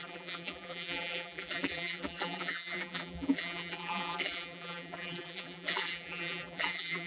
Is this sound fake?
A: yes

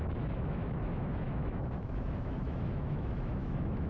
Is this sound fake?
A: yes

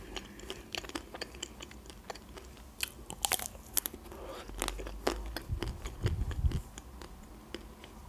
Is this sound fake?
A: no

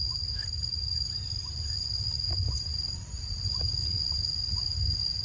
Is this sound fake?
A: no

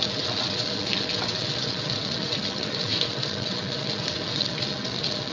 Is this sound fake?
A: yes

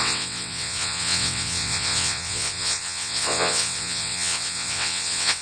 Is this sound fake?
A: yes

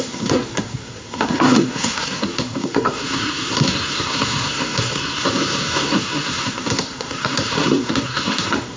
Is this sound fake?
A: yes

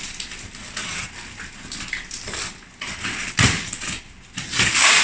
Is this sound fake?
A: no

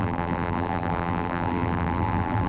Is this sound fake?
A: yes